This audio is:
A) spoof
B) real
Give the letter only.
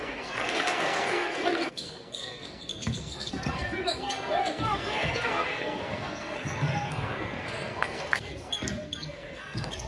A